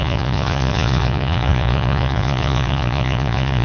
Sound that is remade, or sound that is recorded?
remade